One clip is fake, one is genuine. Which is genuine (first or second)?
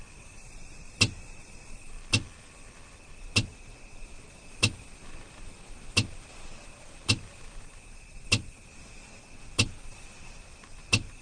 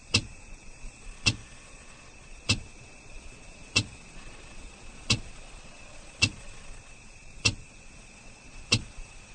first